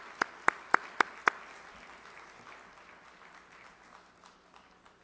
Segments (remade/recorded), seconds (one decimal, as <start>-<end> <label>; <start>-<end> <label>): 0.0-5.0 recorded